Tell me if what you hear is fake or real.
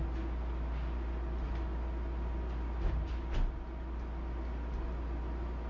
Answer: real